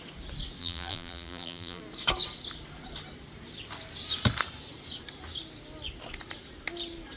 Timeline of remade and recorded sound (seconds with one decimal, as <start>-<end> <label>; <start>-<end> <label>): 0.0-0.6 recorded; 0.6-1.8 remade; 1.8-7.2 recorded